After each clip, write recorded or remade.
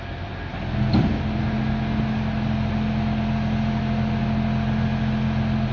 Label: recorded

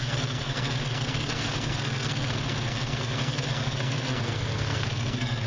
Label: remade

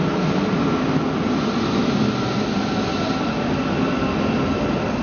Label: recorded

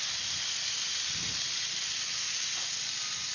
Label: recorded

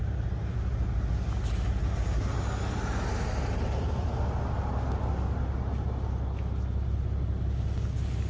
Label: recorded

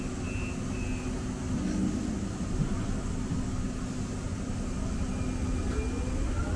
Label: recorded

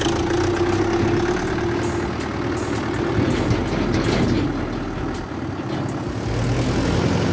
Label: recorded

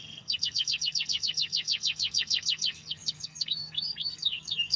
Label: remade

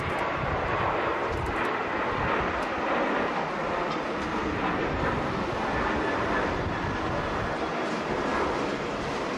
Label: recorded